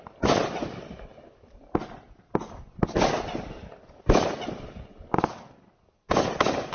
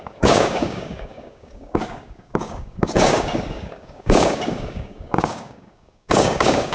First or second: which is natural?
first